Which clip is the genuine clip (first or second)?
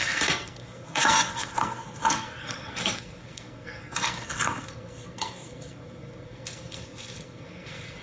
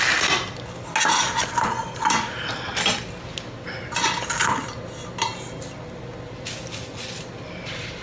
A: second